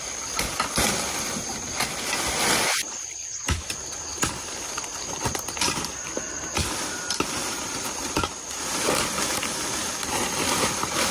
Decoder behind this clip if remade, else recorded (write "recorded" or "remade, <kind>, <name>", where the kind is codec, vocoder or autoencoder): remade, vocoder, BigVGAN v2